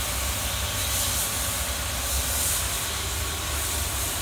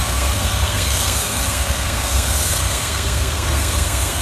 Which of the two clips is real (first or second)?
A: first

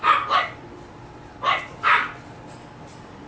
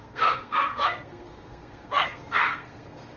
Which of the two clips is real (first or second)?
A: first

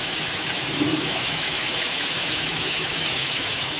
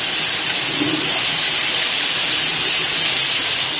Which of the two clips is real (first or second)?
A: second